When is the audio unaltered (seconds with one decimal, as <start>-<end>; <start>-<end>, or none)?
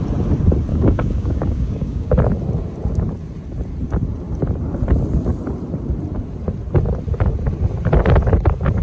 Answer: 0.0-0.7; 2.1-8.8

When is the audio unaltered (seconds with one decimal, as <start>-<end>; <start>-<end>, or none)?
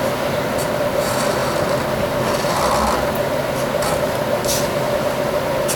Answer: 0.0-5.8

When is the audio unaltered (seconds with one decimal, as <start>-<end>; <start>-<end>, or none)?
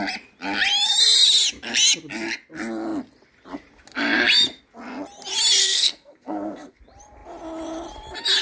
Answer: 0.0-5.6; 6.8-8.4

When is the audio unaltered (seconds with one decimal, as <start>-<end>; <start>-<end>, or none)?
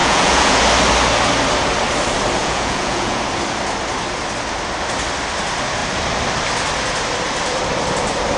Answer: 0.6-2.4; 3.2-8.4